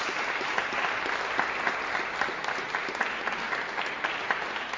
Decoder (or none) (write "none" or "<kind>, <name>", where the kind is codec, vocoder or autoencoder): none